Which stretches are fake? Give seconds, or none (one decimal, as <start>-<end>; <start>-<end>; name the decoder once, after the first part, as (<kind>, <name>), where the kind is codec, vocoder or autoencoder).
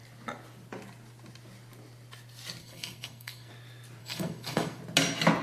2.6-3.5 (codec, SNAC); 4.0-4.8